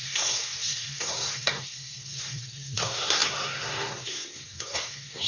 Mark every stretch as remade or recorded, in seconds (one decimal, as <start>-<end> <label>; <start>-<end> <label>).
0.0-5.3 remade